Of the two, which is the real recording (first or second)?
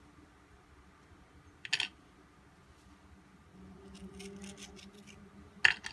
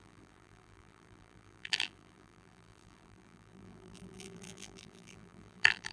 first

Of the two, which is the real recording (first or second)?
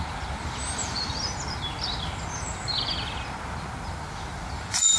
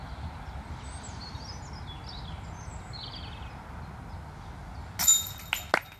second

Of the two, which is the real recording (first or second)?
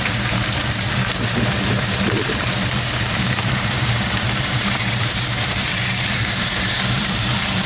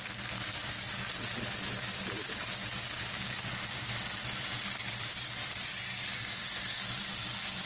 second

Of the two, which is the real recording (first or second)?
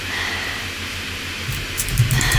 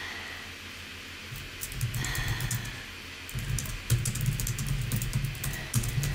second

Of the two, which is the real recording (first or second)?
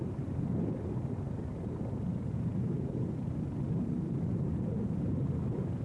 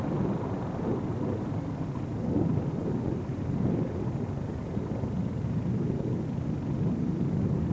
second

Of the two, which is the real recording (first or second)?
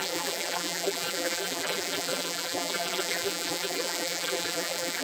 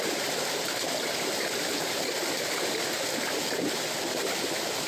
second